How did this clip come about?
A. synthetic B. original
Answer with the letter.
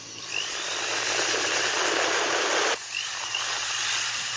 A